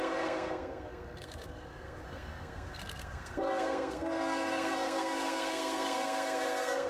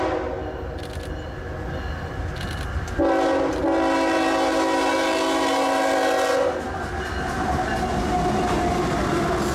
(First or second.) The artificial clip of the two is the first